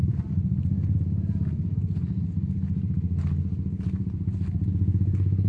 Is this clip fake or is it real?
real